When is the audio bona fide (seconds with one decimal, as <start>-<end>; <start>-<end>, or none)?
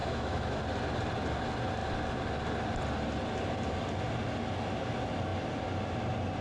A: 0.6-6.4